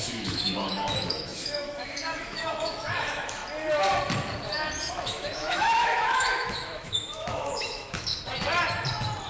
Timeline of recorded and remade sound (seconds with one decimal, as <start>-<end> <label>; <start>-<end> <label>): 0.0-3.4 remade; 3.4-4.9 recorded; 4.9-8.1 remade; 8.1-9.3 recorded